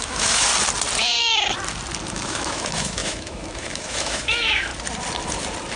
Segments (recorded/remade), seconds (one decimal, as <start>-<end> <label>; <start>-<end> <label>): 0.0-0.5 remade; 0.5-2.1 recorded; 2.1-4.7 remade; 4.7-5.8 recorded